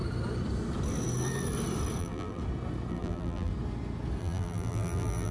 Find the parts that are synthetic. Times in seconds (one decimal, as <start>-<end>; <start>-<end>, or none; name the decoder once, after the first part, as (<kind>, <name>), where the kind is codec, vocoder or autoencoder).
2.0-2.4 (vocoder, BigVGAN v2); 2.9-3.5; 4.2-5.3